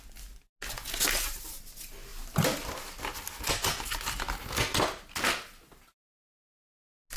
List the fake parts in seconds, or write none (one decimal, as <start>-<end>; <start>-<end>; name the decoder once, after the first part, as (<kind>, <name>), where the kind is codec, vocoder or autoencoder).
none